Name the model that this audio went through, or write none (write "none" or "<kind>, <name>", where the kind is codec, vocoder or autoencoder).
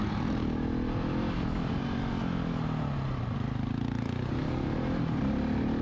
none